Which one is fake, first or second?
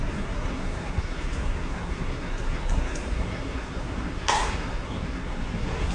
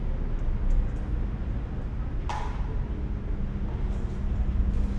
first